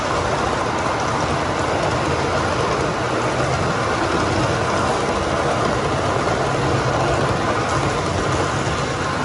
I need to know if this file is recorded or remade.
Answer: recorded